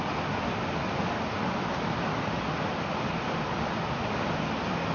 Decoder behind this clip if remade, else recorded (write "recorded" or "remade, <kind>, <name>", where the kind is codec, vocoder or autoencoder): recorded